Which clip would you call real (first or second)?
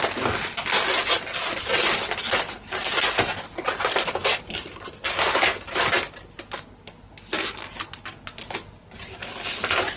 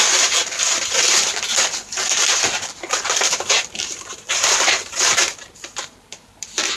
first